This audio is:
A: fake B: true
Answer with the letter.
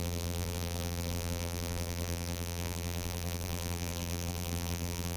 A